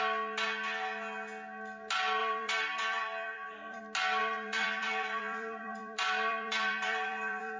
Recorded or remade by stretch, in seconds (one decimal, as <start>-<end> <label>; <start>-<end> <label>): 0.0-2.2 recorded; 2.2-3.8 remade; 3.8-4.2 recorded; 4.2-7.6 remade